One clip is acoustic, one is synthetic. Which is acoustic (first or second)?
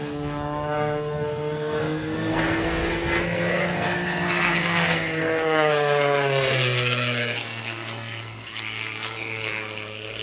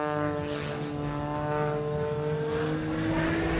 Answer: second